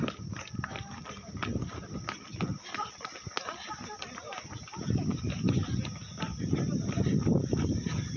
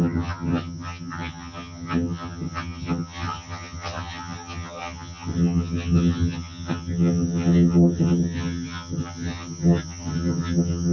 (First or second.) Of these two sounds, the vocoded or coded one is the second